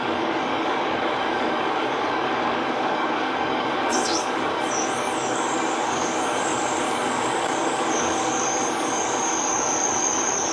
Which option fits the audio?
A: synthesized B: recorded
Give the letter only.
A